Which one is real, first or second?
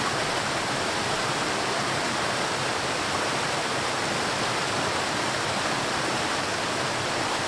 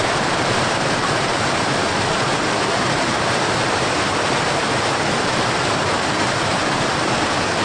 first